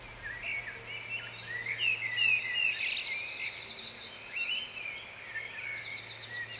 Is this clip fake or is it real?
real